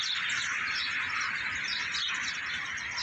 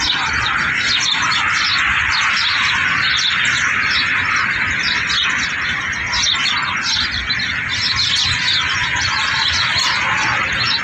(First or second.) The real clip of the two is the second